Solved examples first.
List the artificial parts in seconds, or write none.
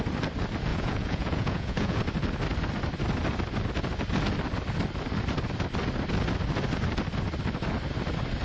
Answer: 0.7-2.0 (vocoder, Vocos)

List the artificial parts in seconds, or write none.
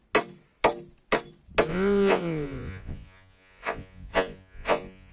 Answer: 1.7-5.1 (vocoder, Vocos)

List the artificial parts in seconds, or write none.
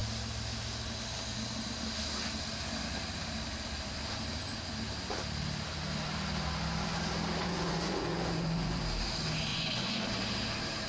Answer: 7.4-8.8 (vocoder, Vocos); 9.5-10.0